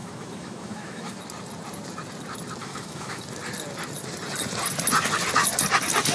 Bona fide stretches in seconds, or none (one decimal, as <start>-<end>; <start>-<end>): 1.2-2.6; 3.2-6.1